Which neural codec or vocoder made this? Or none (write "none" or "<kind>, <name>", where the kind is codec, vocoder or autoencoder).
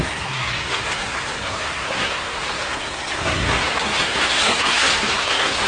codec, SNAC